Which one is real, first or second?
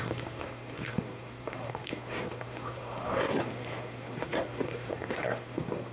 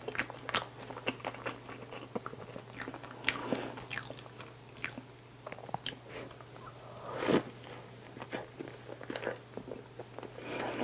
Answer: second